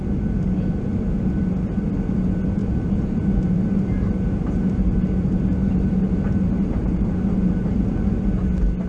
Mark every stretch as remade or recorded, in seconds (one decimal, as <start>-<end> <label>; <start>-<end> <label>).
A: 0.0-2.6 recorded; 2.6-4.5 remade; 4.5-5.6 recorded; 5.6-7.8 remade; 7.8-8.9 recorded